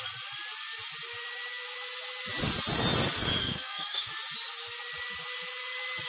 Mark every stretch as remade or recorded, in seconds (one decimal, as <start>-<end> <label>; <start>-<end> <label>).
0.0-3.4 recorded; 3.4-4.1 remade; 4.1-6.1 recorded